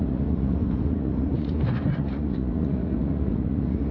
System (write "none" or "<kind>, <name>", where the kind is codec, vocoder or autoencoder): vocoder, Vocos